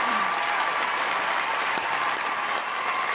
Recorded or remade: remade